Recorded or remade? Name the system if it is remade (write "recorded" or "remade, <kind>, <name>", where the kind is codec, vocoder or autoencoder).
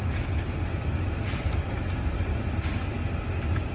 recorded